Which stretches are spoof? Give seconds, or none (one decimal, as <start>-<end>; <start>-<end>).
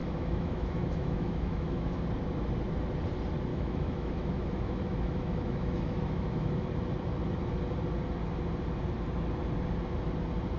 0.0-2.0; 3.5-6.7